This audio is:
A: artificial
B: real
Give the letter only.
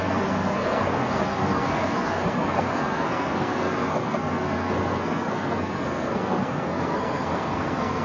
A